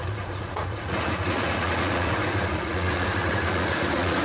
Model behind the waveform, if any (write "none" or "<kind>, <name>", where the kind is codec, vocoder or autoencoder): vocoder, Vocos